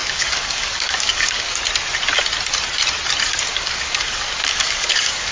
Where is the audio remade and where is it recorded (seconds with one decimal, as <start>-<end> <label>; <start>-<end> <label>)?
0.0-1.6 remade; 1.6-3.5 recorded; 3.5-5.3 remade

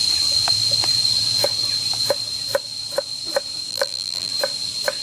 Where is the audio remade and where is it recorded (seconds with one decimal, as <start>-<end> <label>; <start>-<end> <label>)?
0.0-3.7 recorded; 3.7-4.3 remade; 4.3-5.0 recorded

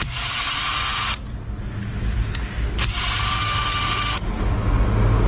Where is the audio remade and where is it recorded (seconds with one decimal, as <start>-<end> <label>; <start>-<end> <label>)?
0.0-3.4 recorded; 3.4-4.3 remade; 4.3-5.3 recorded

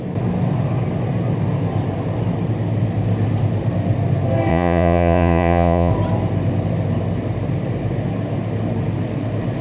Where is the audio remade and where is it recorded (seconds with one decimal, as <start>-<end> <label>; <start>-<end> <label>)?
0.0-4.5 recorded; 4.5-5.9 remade; 5.9-9.6 recorded

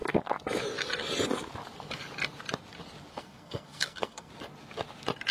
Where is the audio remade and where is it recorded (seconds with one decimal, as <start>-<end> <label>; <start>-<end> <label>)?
0.0-3.1 recorded; 3.1-4.3 remade; 4.3-5.3 recorded

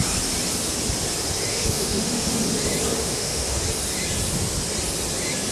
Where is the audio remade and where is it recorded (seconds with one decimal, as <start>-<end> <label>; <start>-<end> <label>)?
0.0-1.5 recorded; 1.5-2.4 remade; 2.4-3.0 recorded; 3.0-3.6 remade; 3.6-5.5 recorded